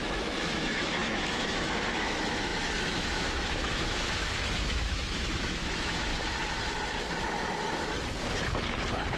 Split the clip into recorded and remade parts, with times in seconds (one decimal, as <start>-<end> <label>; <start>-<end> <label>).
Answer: 0.0-6.1 remade; 6.1-9.2 recorded